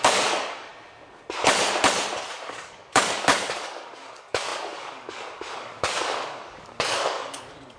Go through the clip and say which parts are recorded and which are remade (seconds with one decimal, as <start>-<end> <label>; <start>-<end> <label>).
0.0-0.7 remade; 0.7-2.3 recorded; 2.3-7.8 remade